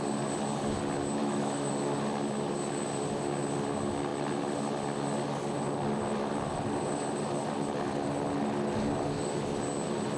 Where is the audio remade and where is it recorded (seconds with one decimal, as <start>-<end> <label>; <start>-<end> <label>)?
0.0-1.2 recorded; 1.2-1.7 remade; 1.7-10.2 recorded